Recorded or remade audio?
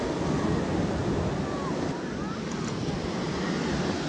recorded